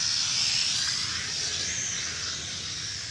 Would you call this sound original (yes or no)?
yes